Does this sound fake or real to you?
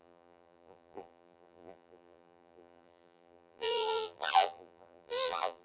fake